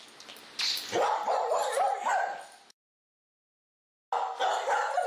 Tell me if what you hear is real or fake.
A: real